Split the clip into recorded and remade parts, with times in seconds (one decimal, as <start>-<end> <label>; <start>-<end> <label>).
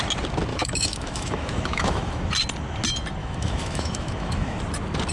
0.0-0.5 recorded; 0.5-2.3 remade; 2.3-3.2 recorded; 3.2-4.6 remade; 4.6-5.1 recorded